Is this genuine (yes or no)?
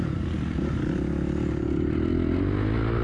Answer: yes